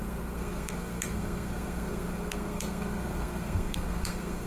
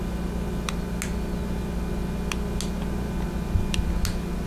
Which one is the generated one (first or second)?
first